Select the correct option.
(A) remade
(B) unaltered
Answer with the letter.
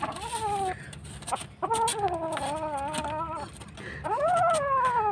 B